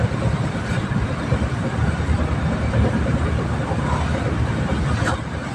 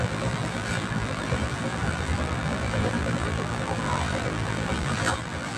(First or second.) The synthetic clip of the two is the second